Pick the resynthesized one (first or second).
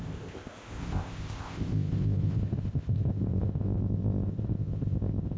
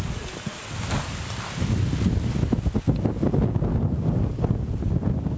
first